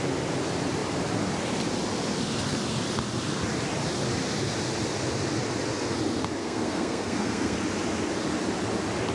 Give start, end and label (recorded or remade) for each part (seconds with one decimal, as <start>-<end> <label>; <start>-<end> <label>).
0.0-6.4 recorded; 6.4-7.6 remade; 7.6-9.1 recorded